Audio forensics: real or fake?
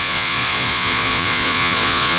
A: fake